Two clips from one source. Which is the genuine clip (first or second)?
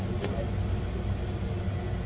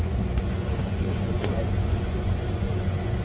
first